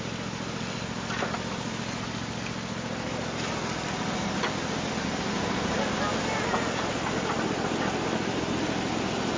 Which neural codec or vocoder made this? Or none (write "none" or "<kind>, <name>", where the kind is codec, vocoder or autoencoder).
none